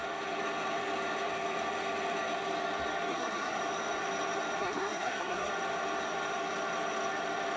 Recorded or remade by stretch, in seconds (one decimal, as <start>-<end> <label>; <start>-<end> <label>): 0.0-3.1 recorded; 3.1-3.6 remade; 3.6-4.6 recorded; 4.6-5.5 remade; 5.5-7.6 recorded